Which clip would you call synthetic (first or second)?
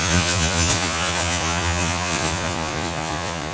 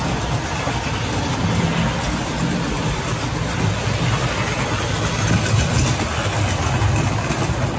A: first